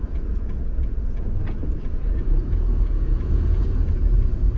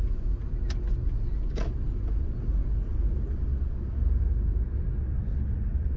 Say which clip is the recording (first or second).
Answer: second